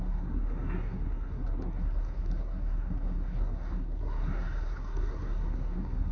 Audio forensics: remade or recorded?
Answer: remade